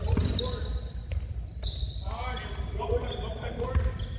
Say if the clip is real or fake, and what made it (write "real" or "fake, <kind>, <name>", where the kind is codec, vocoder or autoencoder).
real